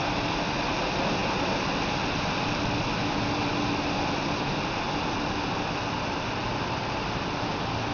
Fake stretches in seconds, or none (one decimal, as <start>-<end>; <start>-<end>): none